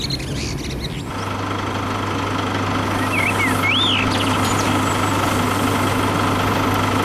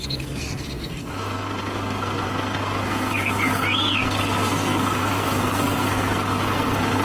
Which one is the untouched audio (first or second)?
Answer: first